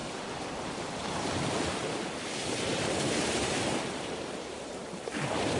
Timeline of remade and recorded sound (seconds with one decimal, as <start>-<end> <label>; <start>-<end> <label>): 0.0-2.1 recorded; 2.1-5.6 remade